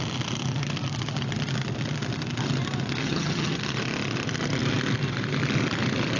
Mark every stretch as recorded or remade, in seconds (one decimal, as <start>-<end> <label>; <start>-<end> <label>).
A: 0.0-3.0 recorded; 3.0-3.6 remade; 3.6-6.2 recorded